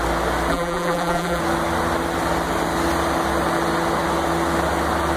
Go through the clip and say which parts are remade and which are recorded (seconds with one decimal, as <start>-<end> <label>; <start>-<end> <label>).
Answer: 0.0-0.5 recorded; 0.5-1.4 remade; 1.4-5.2 recorded